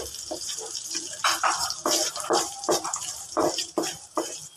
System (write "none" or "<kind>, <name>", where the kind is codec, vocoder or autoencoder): vocoder, BigVGAN v2